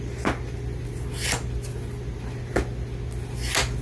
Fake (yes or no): no